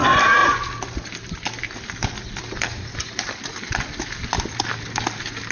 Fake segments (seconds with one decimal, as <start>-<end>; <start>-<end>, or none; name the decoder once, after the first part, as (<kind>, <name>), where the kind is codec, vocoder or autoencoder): none